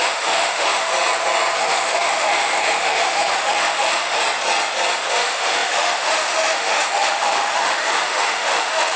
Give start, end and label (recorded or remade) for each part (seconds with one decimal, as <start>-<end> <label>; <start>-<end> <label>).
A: 0.0-0.9 remade; 0.9-1.6 recorded; 1.6-4.2 remade; 4.2-5.1 recorded; 5.1-9.0 remade